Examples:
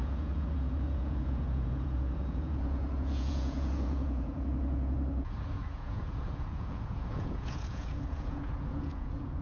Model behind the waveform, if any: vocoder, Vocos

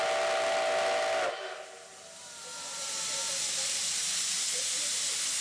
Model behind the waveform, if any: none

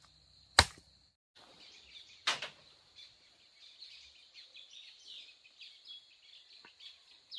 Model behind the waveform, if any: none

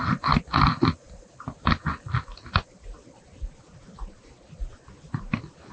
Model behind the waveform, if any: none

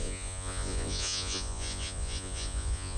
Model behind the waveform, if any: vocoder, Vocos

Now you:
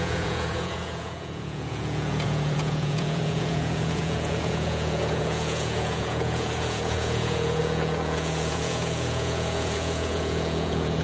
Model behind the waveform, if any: vocoder, Vocos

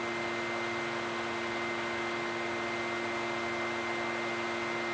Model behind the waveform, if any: none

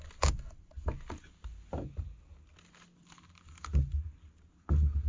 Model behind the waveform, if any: none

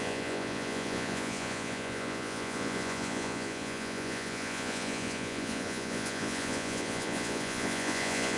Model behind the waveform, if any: vocoder, Vocos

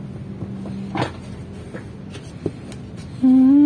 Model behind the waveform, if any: none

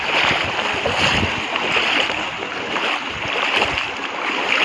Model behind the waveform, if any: none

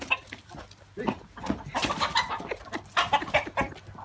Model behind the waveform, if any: none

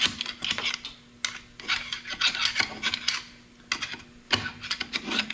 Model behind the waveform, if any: none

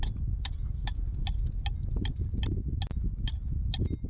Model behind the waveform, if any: none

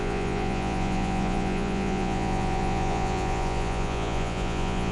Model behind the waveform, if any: vocoder, Vocos